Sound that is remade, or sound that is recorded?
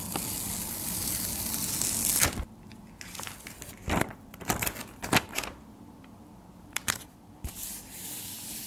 remade